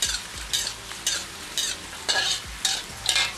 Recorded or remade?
recorded